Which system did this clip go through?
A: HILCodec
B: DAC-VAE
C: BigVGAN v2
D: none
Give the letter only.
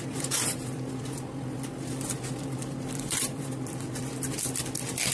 C